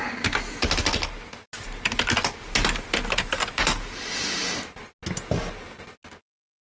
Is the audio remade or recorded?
recorded